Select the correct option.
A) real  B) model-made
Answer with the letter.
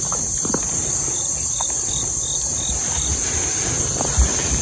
A